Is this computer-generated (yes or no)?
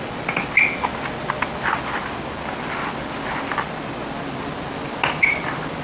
no